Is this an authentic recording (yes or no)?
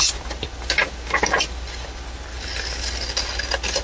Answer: yes